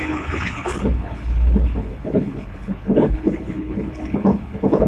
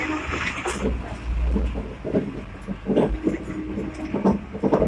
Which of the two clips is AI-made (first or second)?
first